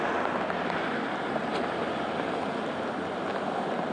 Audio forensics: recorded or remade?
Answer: recorded